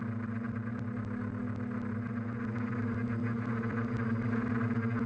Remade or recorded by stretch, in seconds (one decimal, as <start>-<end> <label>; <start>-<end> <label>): 0.0-5.1 recorded